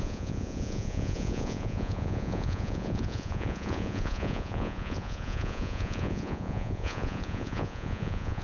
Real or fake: fake